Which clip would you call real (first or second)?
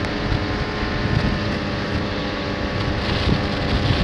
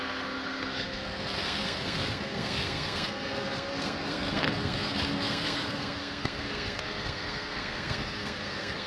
first